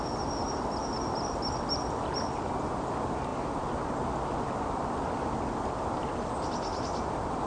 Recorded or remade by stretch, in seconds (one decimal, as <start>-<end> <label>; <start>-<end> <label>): 0.0-7.5 recorded